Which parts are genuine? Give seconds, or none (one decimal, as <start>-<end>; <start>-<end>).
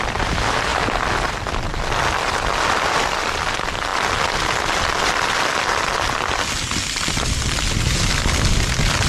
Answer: 0.0-9.1